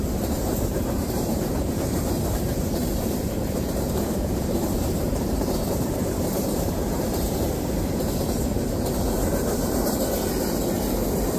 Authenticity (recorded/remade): remade